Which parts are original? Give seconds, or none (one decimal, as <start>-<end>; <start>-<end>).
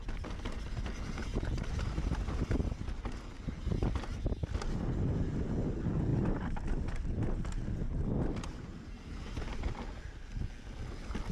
0.0-6.1; 8.9-11.3